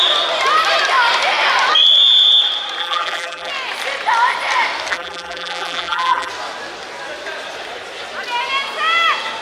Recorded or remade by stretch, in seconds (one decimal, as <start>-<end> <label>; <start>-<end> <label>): 0.0-2.8 recorded; 2.8-3.5 remade; 3.5-4.9 recorded; 4.9-6.3 remade; 6.3-9.4 recorded